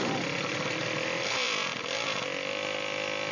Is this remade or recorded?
recorded